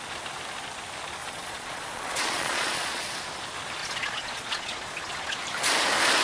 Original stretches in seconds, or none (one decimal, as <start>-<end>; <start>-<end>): 0.0-1.2; 3.2-3.8; 5.4-6.2